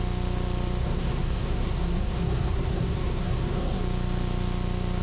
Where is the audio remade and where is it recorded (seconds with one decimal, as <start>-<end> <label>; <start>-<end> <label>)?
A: 0.0-0.8 recorded; 0.8-3.8 remade; 3.8-5.0 recorded